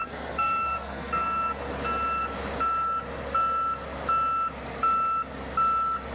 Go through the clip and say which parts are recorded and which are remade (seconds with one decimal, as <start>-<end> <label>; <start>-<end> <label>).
0.0-1.6 remade; 1.6-6.1 recorded